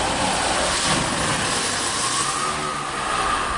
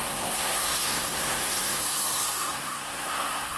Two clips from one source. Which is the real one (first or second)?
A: first